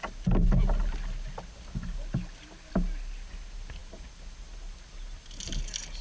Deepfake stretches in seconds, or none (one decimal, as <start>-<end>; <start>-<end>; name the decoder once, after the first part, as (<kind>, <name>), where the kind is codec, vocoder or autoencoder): none

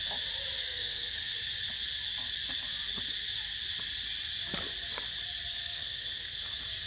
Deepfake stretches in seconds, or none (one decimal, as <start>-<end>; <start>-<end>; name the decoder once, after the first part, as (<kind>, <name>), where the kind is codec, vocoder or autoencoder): 0.6-1.3 (codec, SNAC); 5.5-6.4

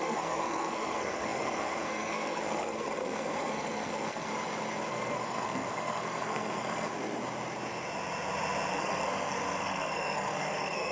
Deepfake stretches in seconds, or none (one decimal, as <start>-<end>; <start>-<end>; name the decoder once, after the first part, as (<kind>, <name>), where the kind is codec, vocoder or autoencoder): 0.0-4.3 (codec, SNAC); 4.9-6.9; 8.7-10.9

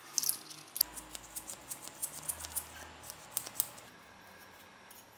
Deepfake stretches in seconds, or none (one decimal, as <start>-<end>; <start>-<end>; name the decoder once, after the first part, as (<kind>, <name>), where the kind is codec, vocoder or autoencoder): none

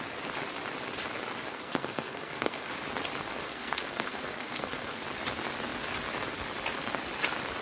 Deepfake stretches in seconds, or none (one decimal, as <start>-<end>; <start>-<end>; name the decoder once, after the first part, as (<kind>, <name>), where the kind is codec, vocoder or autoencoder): 1.5-2.7 (codec, SNAC); 3.3-5.0